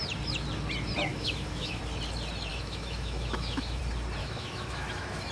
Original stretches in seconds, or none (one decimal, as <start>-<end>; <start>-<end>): 0.0-1.1; 1.8-2.5; 3.8-4.2